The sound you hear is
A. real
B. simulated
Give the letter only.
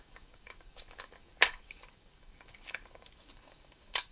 B